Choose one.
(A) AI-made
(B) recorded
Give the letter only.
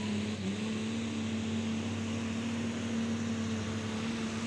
B